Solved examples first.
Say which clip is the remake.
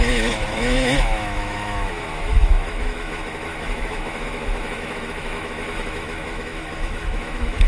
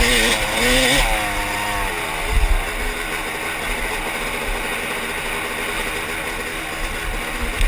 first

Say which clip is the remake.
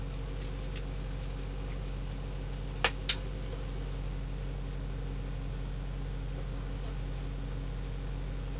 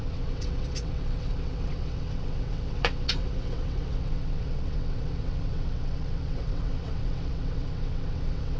second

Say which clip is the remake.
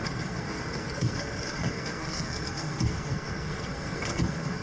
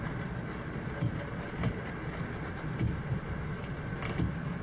first